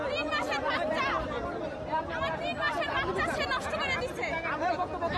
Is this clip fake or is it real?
real